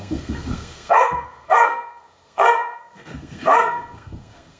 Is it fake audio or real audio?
fake